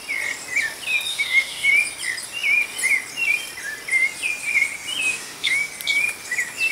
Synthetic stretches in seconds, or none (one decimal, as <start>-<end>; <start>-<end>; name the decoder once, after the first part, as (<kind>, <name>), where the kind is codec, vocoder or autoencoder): 1.1-1.7 (autoencoder, DAC-VAE); 5.1-5.7